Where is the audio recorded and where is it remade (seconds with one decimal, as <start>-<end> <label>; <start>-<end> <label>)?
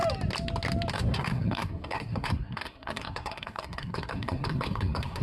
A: 0.0-0.9 recorded; 0.9-5.2 remade